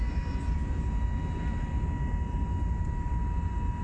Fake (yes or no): no